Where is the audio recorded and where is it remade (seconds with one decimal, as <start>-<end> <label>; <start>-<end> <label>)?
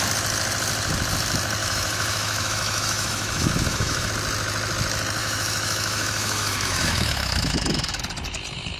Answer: 0.0-1.6 recorded; 1.6-4.1 remade; 4.1-5.2 recorded; 5.2-8.0 remade; 8.0-8.8 recorded